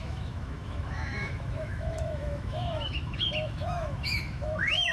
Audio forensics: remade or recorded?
remade